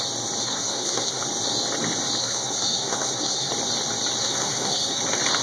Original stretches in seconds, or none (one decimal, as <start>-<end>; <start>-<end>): 0.0-0.4; 1.2-2.2; 3.5-4.2; 5.0-5.4

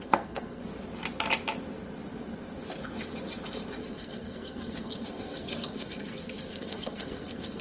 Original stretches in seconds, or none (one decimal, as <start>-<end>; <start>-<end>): 0.6-3.8

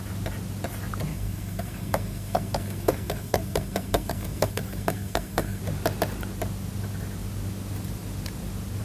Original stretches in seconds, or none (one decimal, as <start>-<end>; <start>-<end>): 0.0-1.1; 5.6-8.8

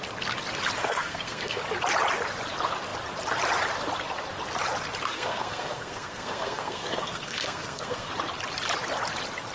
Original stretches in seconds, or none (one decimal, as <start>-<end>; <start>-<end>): 0.0-0.8; 1.6-5.1; 8.1-9.5

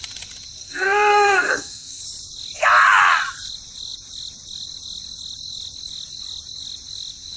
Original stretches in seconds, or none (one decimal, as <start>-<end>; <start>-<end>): 0.0-0.6; 2.0-7.4